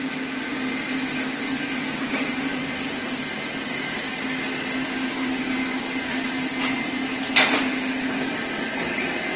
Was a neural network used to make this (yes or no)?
no